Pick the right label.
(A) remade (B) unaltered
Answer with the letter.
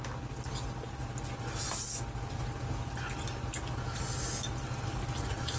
B